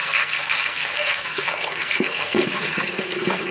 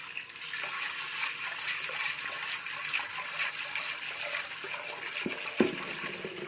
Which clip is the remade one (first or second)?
first